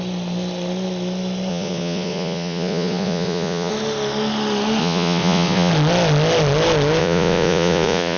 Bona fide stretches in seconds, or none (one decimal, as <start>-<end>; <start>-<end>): 0.0-1.5; 3.7-4.8; 5.7-7.0